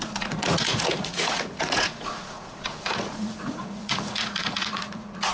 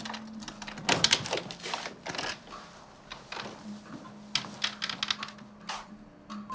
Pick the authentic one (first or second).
second